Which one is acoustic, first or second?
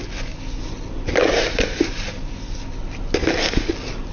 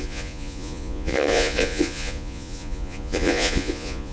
first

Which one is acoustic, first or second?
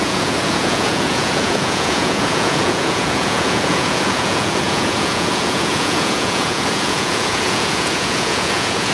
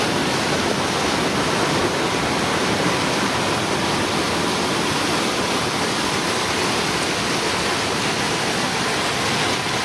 second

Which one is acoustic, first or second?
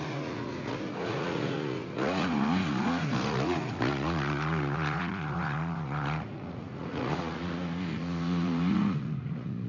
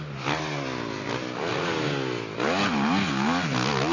second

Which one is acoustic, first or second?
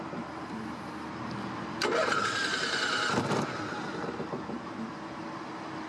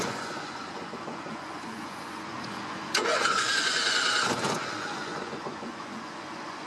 first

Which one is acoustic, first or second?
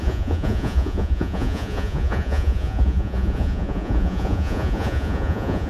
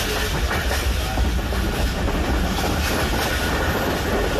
second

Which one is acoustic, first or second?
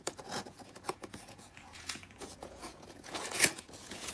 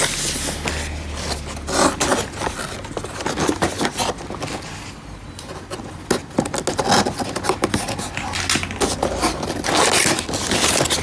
second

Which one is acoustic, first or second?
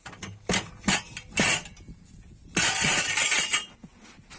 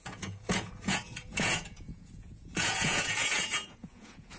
first